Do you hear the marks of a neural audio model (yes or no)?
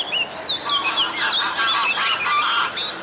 no